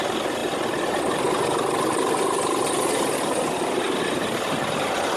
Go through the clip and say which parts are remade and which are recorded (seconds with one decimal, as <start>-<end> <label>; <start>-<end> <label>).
0.0-5.2 recorded